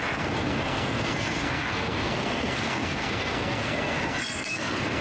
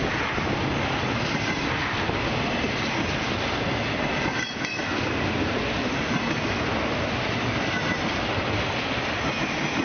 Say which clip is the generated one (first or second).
first